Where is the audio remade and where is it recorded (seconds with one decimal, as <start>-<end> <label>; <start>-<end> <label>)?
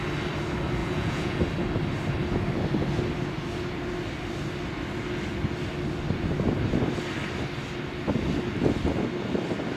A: 0.0-0.8 recorded; 0.8-1.4 remade; 1.4-9.8 recorded